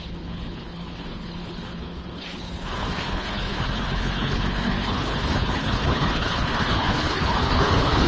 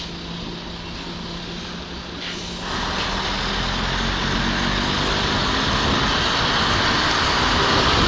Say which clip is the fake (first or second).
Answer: first